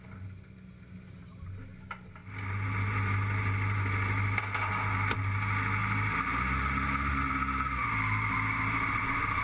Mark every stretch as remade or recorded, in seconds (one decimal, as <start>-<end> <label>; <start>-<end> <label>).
0.0-9.4 recorded